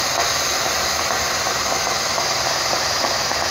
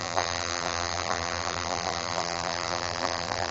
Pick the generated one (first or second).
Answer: second